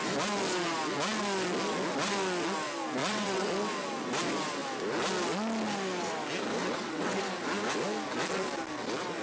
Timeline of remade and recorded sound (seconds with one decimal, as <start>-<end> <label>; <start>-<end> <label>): 0.0-3.0 recorded; 3.0-3.5 remade; 3.5-6.6 recorded; 6.6-7.2 remade; 7.2-9.2 recorded